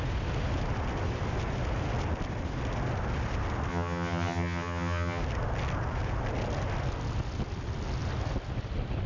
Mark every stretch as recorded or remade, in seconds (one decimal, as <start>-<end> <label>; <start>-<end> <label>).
0.0-3.7 recorded; 3.7-5.2 remade; 5.2-9.1 recorded